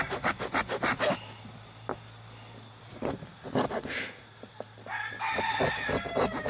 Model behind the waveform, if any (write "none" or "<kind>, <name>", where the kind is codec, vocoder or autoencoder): none